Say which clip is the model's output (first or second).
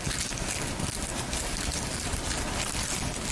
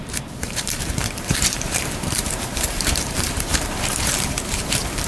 second